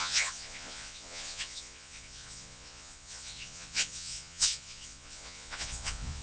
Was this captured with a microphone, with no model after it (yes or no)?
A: no